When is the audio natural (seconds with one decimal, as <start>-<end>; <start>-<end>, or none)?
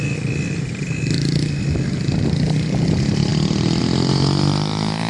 0.0-3.3; 3.8-5.1